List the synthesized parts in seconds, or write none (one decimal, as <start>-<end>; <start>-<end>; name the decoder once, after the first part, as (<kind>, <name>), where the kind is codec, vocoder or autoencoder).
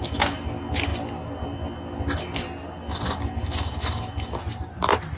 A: none